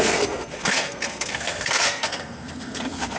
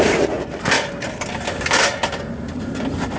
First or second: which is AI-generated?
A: first